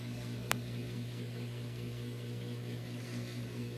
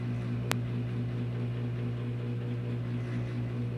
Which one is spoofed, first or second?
first